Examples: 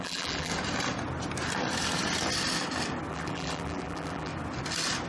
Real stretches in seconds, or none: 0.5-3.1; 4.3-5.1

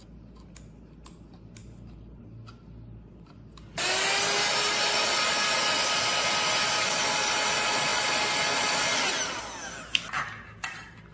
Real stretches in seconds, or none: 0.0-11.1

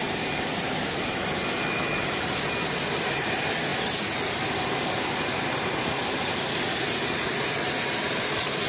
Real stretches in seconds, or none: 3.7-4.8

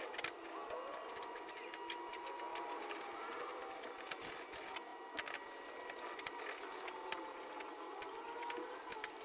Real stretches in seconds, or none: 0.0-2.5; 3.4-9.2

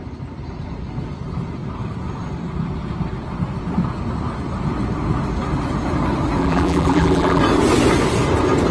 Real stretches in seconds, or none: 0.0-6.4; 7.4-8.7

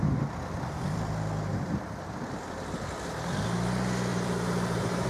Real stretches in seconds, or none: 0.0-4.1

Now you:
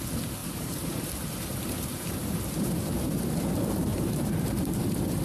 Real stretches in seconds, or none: 0.0-0.4; 3.3-3.9